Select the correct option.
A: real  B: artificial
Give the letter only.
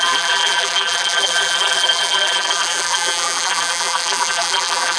B